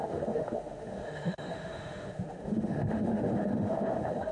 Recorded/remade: remade